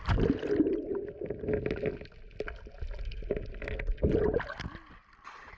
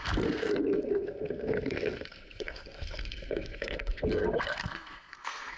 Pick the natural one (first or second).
first